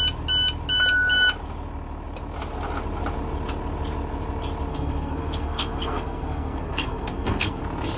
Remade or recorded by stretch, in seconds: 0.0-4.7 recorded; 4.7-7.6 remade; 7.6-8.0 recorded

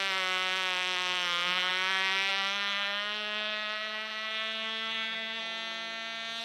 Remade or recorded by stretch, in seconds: 0.0-5.4 remade; 5.4-6.4 recorded

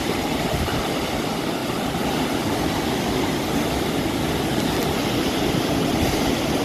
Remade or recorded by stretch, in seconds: 0.0-6.6 recorded

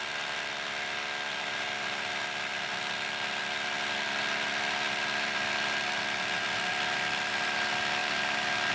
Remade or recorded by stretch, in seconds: 0.0-8.7 recorded